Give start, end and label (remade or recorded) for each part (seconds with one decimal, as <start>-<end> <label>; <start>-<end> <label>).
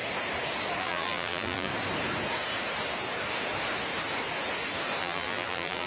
0.0-0.8 recorded; 0.8-1.7 remade; 1.7-5.0 recorded; 5.0-5.9 remade